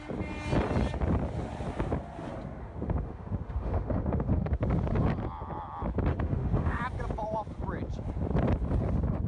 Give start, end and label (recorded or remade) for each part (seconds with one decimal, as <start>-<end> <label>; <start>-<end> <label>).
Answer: 0.0-2.6 recorded; 2.6-4.6 remade; 4.6-6.1 recorded; 6.1-6.8 remade; 6.8-9.3 recorded